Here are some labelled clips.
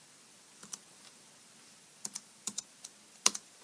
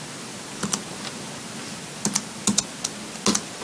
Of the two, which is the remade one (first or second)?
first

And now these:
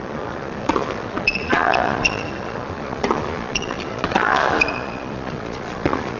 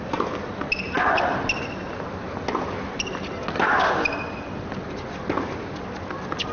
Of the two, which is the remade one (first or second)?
first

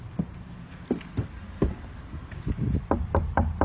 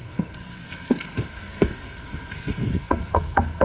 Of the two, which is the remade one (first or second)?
second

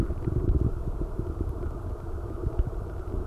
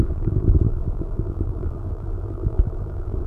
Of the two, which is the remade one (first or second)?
second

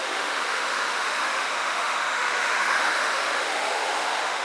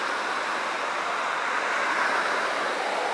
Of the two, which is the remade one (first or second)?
first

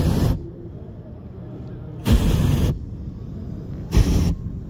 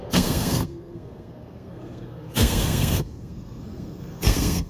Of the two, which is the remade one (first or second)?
second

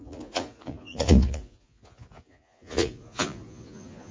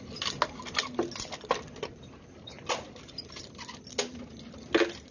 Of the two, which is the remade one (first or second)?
first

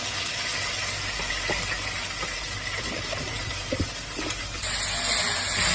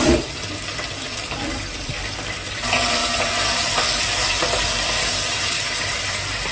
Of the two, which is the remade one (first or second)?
second